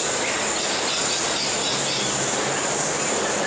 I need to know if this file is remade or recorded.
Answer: recorded